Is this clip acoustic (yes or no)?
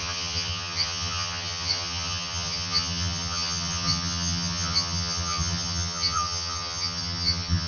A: no